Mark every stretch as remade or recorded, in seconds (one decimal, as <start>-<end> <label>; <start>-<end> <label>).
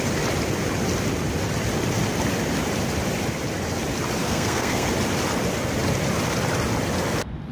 0.0-4.2 recorded; 4.2-4.9 remade; 4.9-7.5 recorded